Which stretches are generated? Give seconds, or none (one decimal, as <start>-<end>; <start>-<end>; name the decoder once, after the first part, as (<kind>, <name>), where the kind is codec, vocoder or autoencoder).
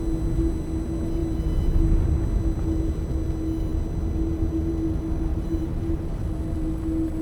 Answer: 5.3-6.2 (vocoder, BigVGAN v2)